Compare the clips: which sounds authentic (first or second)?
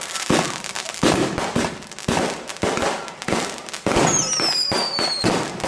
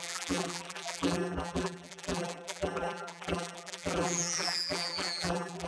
first